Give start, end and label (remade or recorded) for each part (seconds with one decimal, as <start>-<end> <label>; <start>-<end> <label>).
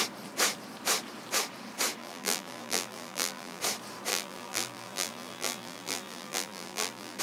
0.0-2.0 recorded; 2.0-3.6 remade; 3.6-4.1 recorded; 4.1-7.2 remade